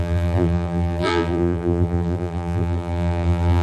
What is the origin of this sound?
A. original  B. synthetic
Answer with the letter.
B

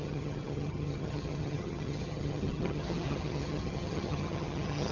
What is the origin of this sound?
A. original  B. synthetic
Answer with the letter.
B